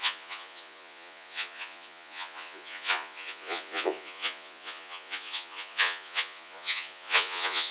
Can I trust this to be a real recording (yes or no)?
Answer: no